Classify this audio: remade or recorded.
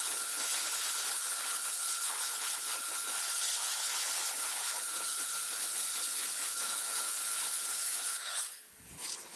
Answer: remade